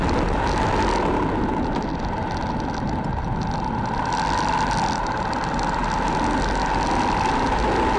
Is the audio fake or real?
real